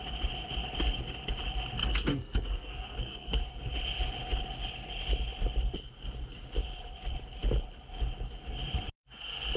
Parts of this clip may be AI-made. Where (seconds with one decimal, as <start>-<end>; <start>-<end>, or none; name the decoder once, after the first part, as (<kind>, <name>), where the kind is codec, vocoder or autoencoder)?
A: 1.8-3.4 (codec, SNAC)